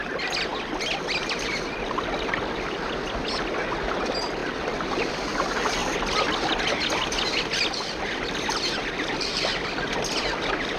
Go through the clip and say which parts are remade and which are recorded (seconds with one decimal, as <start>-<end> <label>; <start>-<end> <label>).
0.0-10.8 recorded